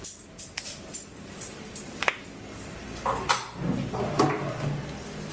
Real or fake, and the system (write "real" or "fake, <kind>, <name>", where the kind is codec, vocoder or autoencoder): real